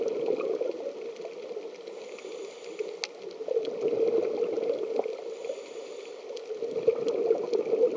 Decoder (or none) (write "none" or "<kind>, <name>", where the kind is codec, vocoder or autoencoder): none